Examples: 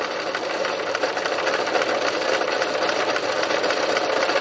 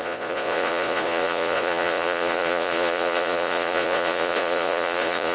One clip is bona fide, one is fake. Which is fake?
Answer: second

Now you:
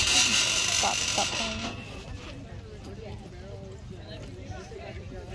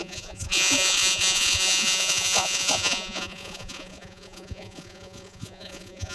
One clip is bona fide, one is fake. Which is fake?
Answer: second